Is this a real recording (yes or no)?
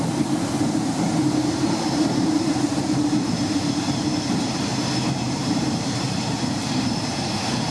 no